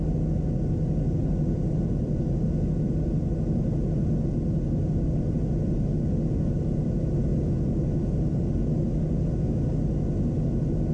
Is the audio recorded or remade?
recorded